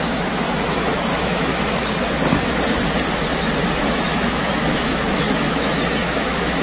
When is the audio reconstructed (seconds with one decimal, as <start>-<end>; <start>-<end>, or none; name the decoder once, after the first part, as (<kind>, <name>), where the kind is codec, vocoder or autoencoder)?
0.0-1.5 (autoencoder, DAC-VAE); 3.9-6.6